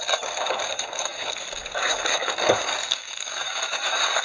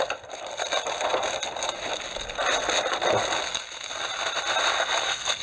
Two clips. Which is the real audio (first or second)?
second